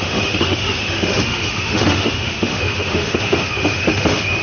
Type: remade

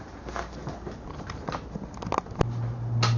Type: recorded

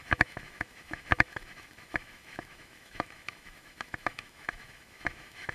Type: remade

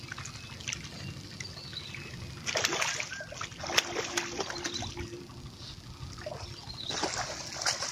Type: recorded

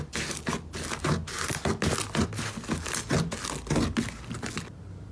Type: recorded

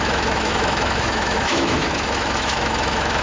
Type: remade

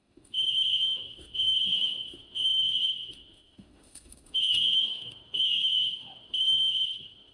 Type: remade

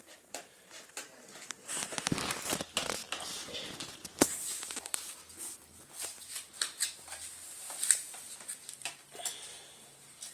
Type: recorded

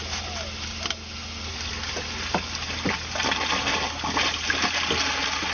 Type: recorded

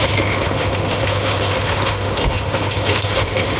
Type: remade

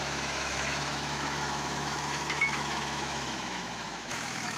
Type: remade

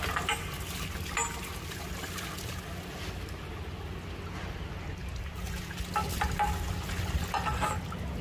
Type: recorded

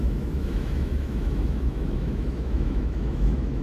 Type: remade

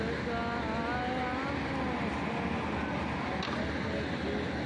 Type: recorded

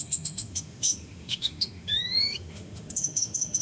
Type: remade